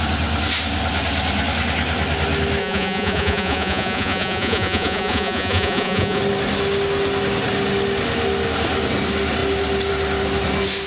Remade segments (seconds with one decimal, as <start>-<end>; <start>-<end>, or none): 2.6-6.2